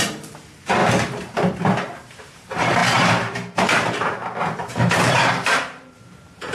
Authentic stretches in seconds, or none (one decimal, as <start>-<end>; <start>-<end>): 0.8-2.3